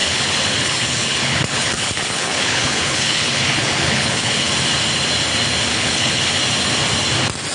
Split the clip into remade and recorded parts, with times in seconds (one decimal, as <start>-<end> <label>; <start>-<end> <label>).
0.0-4.5 remade; 4.5-5.7 recorded; 5.7-6.4 remade; 6.4-7.5 recorded